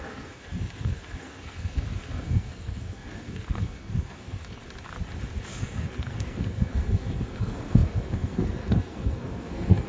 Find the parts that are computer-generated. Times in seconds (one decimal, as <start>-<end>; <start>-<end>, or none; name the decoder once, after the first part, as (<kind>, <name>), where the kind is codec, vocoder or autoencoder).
0.0-4.6 (codec, SNAC); 5.5-9.9